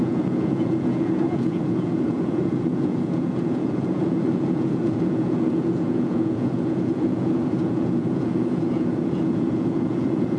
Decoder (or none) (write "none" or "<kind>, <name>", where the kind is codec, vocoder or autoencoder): vocoder, Vocos